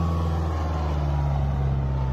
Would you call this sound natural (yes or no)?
yes